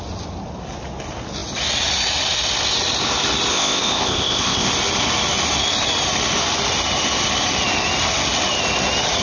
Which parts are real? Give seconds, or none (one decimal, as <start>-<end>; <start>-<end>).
0.0-3.5; 4.7-9.2